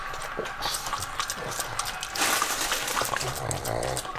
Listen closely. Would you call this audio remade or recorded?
recorded